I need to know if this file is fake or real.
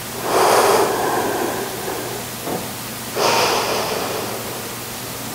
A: real